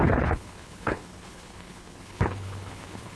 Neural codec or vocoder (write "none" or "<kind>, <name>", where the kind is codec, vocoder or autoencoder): codec, HILCodec